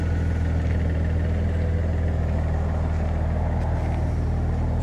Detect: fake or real real